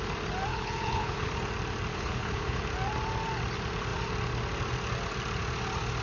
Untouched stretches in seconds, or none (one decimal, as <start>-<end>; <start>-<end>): 0.0-0.5; 1.3-1.9; 2.6-6.0